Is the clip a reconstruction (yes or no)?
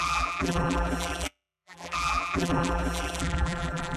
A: yes